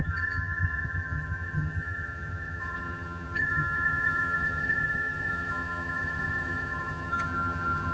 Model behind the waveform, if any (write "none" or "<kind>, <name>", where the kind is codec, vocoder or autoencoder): vocoder, HiFi-GAN